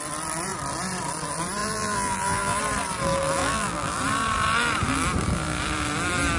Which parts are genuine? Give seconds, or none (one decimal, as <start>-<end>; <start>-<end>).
0.0-1.6; 2.6-3.4; 4.0-6.4